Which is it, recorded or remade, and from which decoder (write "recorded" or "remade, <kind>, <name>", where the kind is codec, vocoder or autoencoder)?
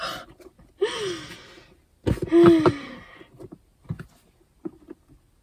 recorded